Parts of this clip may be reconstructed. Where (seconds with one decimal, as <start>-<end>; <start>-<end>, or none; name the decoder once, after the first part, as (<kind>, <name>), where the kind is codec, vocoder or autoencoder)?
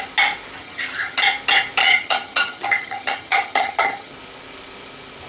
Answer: 0.6-1.2 (vocoder, HiFi-GAN); 1.8-4.1